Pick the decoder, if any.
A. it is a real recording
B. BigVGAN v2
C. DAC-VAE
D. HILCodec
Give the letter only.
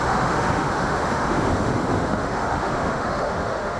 C